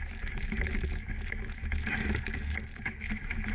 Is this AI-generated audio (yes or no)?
yes